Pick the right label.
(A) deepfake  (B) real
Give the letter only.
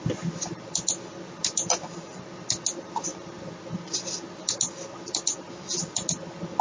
B